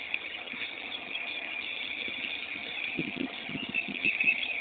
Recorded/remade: remade